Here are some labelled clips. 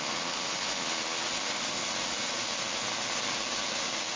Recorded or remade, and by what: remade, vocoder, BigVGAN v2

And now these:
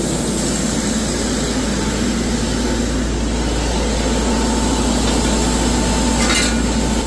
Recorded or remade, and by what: recorded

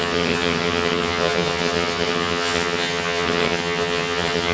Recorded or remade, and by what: remade, vocoder, HiFi-GAN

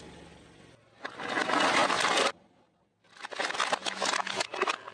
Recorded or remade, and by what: recorded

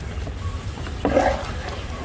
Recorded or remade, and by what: recorded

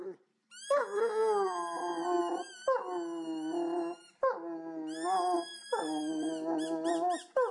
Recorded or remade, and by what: recorded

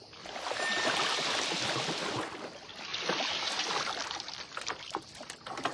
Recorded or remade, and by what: recorded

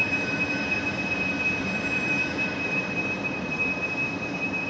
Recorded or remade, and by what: remade, vocoder, BigVGAN v2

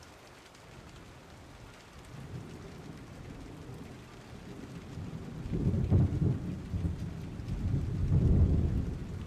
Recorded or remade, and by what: recorded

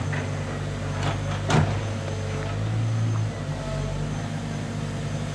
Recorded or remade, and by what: recorded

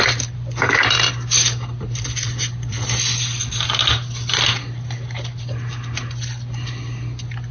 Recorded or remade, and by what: recorded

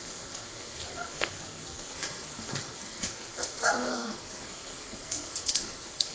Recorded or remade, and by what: remade, codec, SNAC